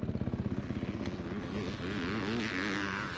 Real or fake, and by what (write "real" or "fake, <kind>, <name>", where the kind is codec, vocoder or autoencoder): real